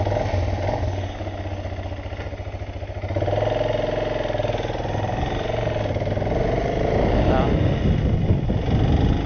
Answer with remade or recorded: recorded